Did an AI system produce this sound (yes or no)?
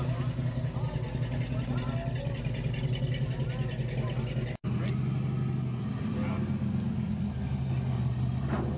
no